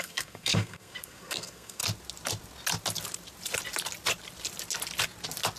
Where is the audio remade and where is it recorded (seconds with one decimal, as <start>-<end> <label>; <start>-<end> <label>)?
0.0-1.8 remade; 1.8-5.6 recorded